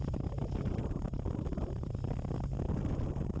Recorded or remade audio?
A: recorded